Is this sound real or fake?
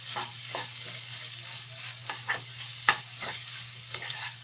fake